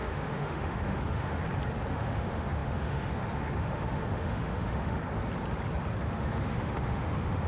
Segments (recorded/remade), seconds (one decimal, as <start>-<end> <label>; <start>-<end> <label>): 0.0-1.4 remade; 1.4-1.9 recorded; 1.9-5.0 remade; 5.0-6.0 recorded; 6.0-7.5 remade